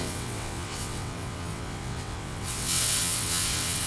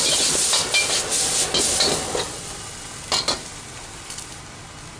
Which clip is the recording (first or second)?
second